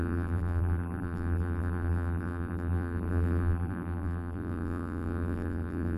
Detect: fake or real fake